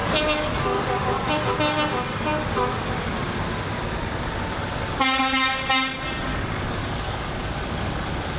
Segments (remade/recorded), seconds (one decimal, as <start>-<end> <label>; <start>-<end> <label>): 0.0-1.3 remade; 1.3-6.3 recorded; 6.3-7.5 remade; 7.5-8.4 recorded